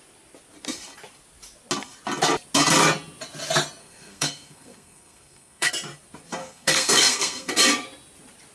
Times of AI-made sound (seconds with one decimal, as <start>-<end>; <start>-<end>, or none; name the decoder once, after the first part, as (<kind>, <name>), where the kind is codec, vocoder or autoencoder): 3.8-5.7 (codec, SNAC); 6.4-7.5